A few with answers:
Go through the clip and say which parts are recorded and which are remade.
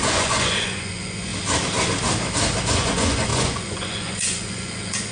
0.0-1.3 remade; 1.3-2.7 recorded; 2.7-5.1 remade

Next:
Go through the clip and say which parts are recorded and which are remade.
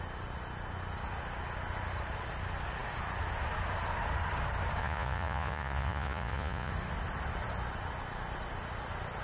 0.0-4.8 recorded; 4.8-6.7 remade; 6.7-9.2 recorded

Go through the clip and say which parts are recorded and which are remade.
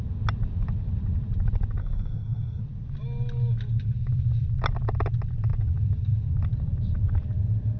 0.0-1.8 recorded; 1.8-2.6 remade; 2.6-7.8 recorded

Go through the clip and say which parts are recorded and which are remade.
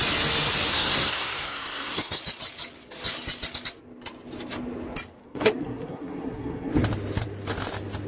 0.0-0.7 recorded; 0.7-2.2 remade; 2.2-5.2 recorded; 5.2-6.7 remade; 6.7-8.1 recorded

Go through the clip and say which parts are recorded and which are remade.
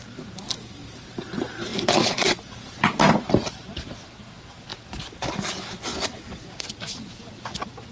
0.0-1.7 recorded; 1.7-3.9 remade; 3.9-5.9 recorded; 5.9-7.1 remade; 7.1-7.9 recorded